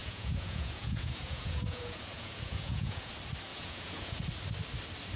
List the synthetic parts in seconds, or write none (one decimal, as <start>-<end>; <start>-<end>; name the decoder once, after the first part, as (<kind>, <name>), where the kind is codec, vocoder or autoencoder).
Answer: 0.0-3.1 (vocoder, Vocos); 3.5-4.2